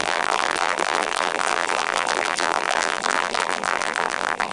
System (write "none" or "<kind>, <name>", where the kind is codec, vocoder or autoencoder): vocoder, BigVGAN v2